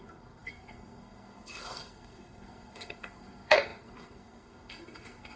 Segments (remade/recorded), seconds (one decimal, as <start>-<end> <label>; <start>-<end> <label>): 0.0-5.4 remade